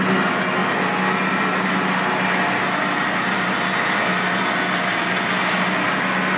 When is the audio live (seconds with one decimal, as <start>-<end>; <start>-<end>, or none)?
0.0-6.4